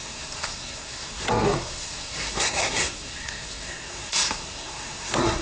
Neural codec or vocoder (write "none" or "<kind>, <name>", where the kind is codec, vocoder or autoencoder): codec, SNAC